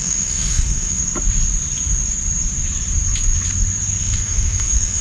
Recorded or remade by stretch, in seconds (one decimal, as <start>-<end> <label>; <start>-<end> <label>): 0.0-1.0 remade; 1.0-4.0 recorded; 4.0-5.0 remade